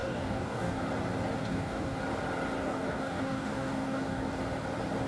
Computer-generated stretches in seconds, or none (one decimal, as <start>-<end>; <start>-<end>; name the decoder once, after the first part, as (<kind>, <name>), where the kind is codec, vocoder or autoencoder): 0.0-0.8 (codec, DAC); 1.4-2.0; 2.6-4.4